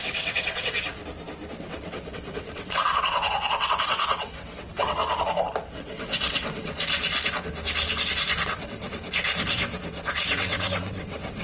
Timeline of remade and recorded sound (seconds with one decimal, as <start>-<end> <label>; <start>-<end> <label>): 0.0-1.0 remade; 1.0-1.6 recorded; 1.6-5.0 remade; 5.0-5.6 recorded; 5.6-6.7 remade; 6.7-8.4 recorded; 8.4-8.9 remade; 8.9-10.3 recorded; 10.3-11.4 remade